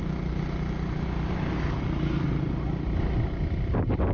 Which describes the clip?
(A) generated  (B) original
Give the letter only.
B